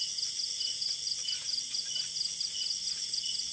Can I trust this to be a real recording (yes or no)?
yes